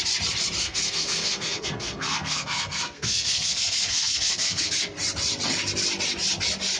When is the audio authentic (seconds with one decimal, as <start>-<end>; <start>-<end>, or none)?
0.0-0.6; 4.7-6.8